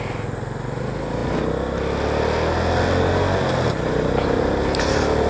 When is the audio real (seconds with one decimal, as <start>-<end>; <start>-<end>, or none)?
0.0-5.3